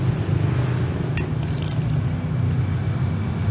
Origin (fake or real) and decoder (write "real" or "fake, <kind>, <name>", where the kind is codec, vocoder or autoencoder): real